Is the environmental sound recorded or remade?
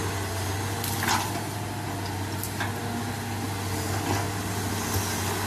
recorded